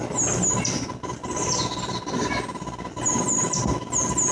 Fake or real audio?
real